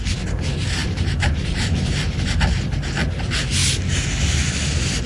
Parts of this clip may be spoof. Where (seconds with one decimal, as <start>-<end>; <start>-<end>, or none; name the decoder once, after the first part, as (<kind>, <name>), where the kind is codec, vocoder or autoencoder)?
0.8-2.0 (vocoder, BigVGAN v2)

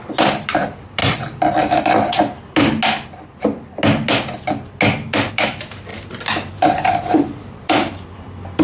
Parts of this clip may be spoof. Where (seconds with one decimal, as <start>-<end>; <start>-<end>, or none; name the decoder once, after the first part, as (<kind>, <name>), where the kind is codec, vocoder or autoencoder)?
0.0-1.0 (vocoder, BigVGAN v2); 5.3-5.9; 6.5-8.6

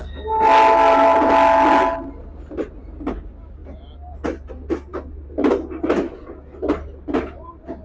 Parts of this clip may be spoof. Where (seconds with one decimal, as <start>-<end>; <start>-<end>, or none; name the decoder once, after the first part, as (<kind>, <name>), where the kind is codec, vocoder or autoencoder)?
none

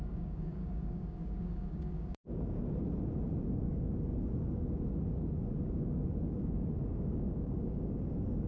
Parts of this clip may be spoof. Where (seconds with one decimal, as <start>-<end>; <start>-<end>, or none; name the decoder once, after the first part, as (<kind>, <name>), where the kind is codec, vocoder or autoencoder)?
0.0-2.6 (codec, DAC); 3.5-4.1; 5.6-8.5

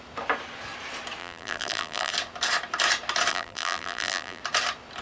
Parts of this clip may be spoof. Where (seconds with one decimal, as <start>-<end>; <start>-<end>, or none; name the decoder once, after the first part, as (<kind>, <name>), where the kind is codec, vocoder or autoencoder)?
1.2-2.1 (vocoder, BigVGAN v2); 3.3-4.4

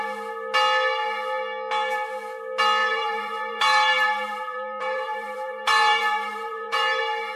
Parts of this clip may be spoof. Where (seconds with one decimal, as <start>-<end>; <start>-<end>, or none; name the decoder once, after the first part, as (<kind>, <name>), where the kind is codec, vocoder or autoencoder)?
2.8-7.0 (vocoder, BigVGAN v2)

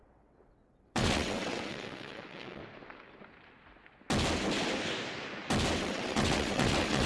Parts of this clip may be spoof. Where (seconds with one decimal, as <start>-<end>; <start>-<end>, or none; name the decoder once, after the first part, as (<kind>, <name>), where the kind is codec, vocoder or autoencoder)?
0.0-2.6 (vocoder, WaveNeXt); 5.8-7.1

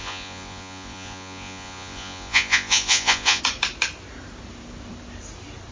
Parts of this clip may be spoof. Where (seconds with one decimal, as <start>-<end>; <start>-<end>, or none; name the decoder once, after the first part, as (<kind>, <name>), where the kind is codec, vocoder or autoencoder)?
0.0-3.4 (vocoder, Vocos)